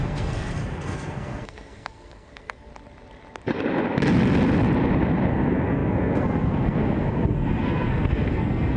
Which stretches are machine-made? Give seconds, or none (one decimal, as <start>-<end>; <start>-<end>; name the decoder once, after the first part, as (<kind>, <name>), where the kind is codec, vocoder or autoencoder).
0.0-2.7 (codec, SNAC); 5.3-8.8